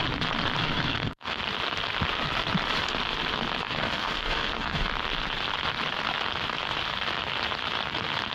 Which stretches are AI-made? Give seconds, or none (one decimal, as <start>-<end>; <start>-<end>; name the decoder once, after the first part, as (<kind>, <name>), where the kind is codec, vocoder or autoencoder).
0.6-1.4 (codec, SNAC); 3.6-4.9